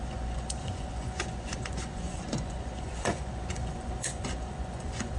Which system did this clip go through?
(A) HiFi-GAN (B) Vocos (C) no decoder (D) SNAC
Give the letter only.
B